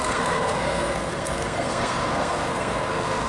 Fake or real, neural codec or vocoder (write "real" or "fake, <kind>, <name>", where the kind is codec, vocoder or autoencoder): fake, codec, SNAC